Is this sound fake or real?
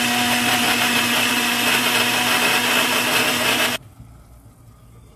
real